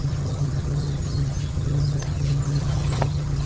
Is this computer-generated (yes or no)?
yes